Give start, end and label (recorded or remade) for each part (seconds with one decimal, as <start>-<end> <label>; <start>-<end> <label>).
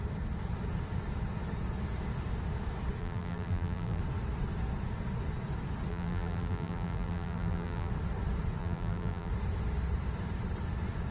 0.0-3.0 recorded; 3.0-4.0 remade; 4.0-5.9 recorded; 5.9-7.9 remade; 7.9-8.6 recorded; 8.6-9.3 remade; 9.3-11.1 recorded